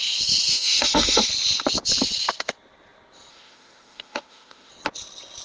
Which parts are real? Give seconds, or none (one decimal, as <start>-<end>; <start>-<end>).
0.0-0.5; 1.3-3.3; 4.7-5.4